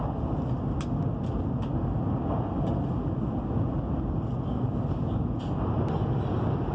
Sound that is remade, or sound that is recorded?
recorded